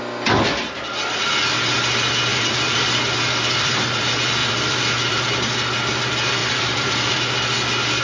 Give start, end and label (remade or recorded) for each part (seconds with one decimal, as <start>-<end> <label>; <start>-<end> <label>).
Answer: 0.0-2.3 recorded; 2.3-4.0 remade; 4.0-4.4 recorded; 4.4-5.2 remade; 5.2-6.4 recorded; 6.4-7.2 remade; 7.2-8.0 recorded